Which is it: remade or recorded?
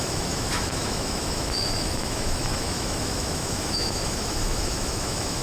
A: remade